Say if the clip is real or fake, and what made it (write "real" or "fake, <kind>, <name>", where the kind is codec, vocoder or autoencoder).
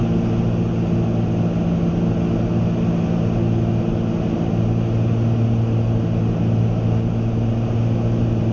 real